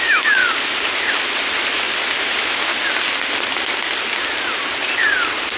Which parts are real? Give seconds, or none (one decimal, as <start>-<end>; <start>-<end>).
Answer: 0.4-2.2; 2.7-5.6